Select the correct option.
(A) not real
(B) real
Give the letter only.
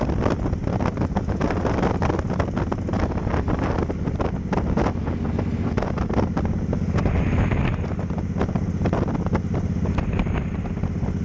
B